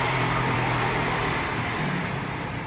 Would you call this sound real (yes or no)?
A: no